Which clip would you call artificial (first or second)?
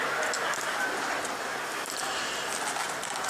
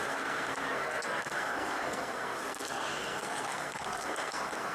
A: second